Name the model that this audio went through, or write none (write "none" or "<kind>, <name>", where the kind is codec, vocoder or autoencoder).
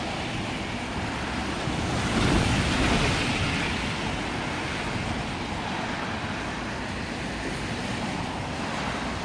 none